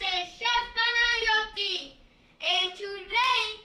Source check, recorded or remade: remade